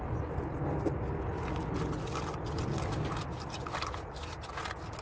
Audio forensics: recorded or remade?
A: recorded